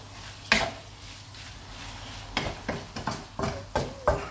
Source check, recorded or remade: recorded